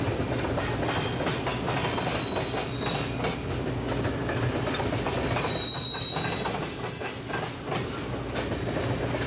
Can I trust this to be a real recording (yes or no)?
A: yes